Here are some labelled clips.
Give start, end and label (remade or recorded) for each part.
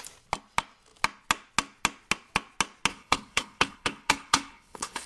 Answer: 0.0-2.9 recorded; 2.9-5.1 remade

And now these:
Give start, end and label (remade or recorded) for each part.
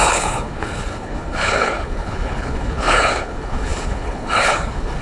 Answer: 0.0-5.0 remade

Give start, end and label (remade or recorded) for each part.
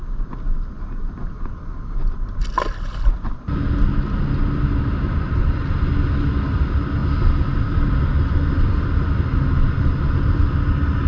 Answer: 0.0-11.1 recorded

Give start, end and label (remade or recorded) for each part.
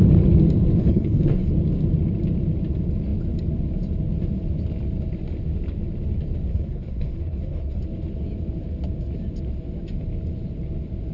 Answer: 0.0-0.8 recorded; 0.8-1.5 remade; 1.5-6.5 recorded; 6.5-7.8 remade; 7.8-11.1 recorded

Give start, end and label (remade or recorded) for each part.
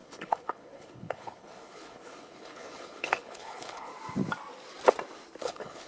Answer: 0.0-3.9 remade; 3.9-5.4 recorded; 5.4-5.9 remade